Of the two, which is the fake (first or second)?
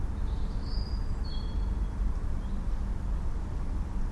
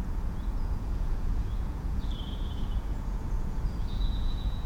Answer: second